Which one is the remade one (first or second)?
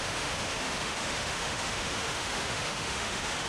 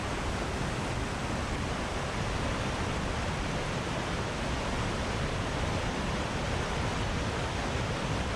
first